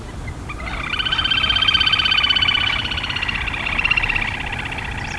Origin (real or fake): real